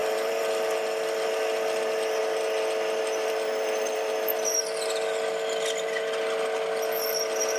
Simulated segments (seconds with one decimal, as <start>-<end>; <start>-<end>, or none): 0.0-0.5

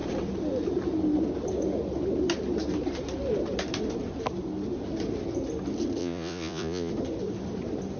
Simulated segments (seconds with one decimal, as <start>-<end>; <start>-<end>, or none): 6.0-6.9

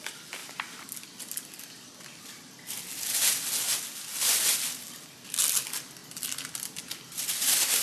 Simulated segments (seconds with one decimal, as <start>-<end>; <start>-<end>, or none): none

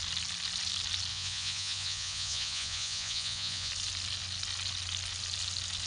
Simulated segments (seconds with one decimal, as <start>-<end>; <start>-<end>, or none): 1.1-3.7

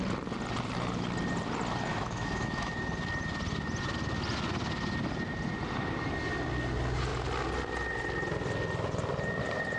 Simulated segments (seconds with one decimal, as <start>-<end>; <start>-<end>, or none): 1.9-2.7